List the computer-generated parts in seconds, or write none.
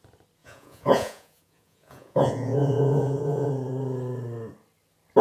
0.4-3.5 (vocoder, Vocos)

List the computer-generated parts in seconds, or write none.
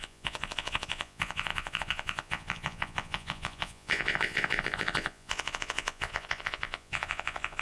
0.0-7.6 (vocoder, Vocos)